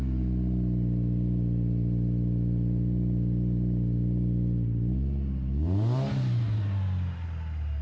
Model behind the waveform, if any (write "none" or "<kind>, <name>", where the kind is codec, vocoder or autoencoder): none